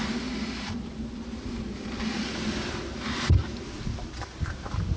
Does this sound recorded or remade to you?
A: recorded